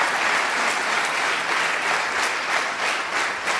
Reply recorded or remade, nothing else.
recorded